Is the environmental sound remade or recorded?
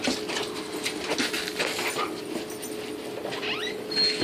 recorded